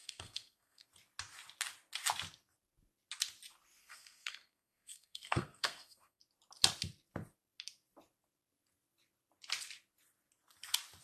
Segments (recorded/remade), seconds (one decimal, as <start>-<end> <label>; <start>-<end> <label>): 0.0-0.9 remade; 0.9-3.8 recorded; 3.8-6.2 remade; 6.2-11.0 recorded